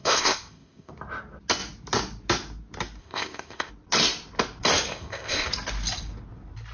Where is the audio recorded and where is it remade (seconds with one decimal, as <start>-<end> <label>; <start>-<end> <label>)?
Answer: 0.0-0.9 remade; 0.9-3.0 recorded; 3.0-3.7 remade; 3.7-4.9 recorded; 4.9-5.5 remade; 5.5-6.7 recorded

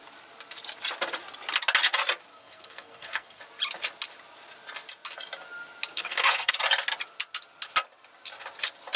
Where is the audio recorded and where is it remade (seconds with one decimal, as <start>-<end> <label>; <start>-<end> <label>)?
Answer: 0.0-2.3 recorded; 2.3-3.4 remade; 3.4-5.9 recorded; 5.9-6.5 remade; 6.5-9.0 recorded

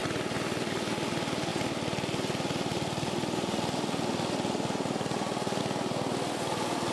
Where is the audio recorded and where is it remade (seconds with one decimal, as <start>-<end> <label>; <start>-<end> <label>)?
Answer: 0.0-6.9 recorded